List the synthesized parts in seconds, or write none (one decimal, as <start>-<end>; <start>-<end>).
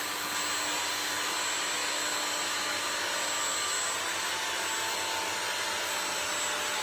none